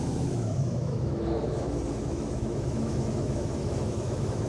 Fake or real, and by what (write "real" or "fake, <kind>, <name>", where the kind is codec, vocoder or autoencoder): fake, autoencoder, DAC-VAE